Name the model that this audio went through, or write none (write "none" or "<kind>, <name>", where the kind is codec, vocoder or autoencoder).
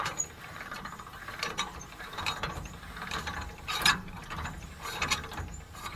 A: vocoder, BigVGAN v2